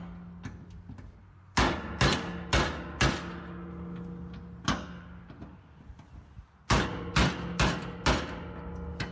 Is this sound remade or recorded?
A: recorded